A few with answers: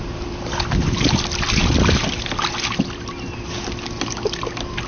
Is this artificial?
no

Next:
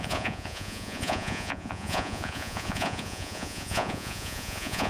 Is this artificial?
yes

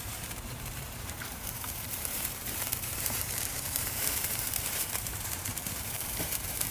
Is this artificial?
yes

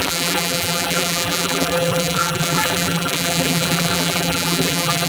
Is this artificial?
yes